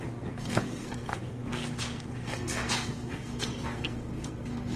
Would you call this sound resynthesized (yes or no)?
yes